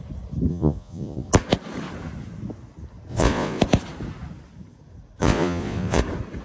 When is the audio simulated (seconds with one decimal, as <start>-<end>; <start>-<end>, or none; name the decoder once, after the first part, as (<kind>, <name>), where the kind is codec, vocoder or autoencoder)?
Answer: 0.5-1.3 (vocoder, Vocos); 3.1-3.6; 5.2-6.0